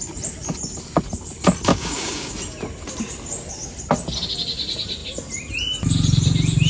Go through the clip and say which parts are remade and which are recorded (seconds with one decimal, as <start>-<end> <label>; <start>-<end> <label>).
0.0-1.7 recorded; 1.7-2.3 remade; 2.3-6.7 recorded